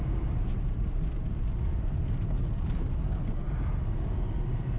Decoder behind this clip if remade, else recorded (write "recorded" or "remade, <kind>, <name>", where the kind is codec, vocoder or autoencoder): recorded